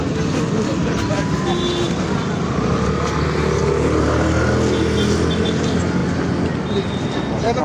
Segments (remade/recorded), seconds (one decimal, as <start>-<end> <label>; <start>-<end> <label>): 0.0-7.6 recorded